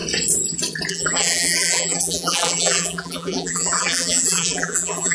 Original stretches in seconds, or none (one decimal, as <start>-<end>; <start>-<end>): 0.0-0.9